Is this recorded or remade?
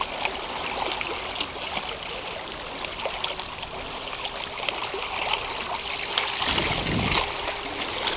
recorded